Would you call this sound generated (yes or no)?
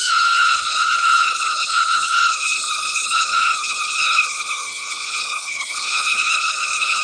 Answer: yes